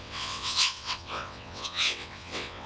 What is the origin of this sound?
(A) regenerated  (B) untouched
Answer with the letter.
A